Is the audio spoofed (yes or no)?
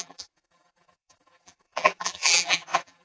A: yes